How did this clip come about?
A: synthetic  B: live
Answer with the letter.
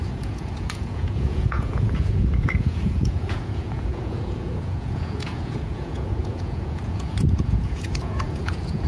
A